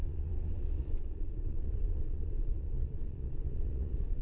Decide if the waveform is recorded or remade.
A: remade